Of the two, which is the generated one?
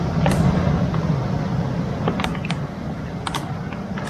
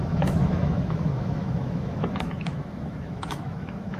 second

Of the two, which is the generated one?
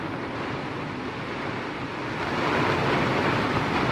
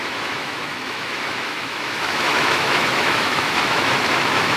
second